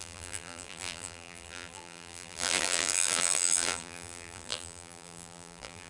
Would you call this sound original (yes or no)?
no